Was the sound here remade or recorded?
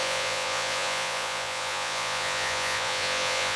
remade